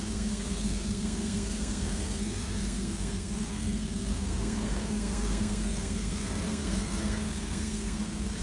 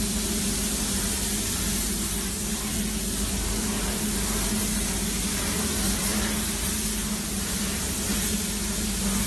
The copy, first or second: first